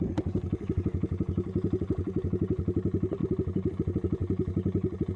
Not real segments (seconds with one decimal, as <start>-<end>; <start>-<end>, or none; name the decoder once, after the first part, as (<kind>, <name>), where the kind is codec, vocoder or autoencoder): none